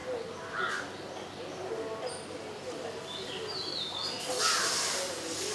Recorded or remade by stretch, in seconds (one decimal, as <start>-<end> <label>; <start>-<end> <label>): 0.0-5.5 recorded